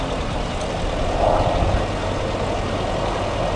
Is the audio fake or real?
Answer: real